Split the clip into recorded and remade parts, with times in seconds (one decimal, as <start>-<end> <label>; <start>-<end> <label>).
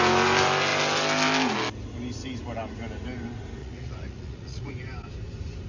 0.0-3.6 recorded; 3.6-4.7 remade; 4.7-5.7 recorded